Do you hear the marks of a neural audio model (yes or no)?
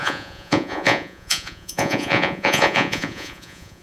yes